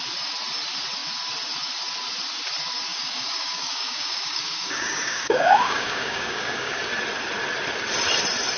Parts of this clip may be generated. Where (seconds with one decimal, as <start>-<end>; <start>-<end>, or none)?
2.9-6.8